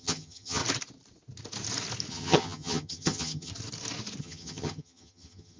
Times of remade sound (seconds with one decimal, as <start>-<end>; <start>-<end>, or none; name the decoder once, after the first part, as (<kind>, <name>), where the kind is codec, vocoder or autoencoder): 0.0-0.6 (vocoder, HiFi-GAN); 2.1-3.5; 4.2-5.6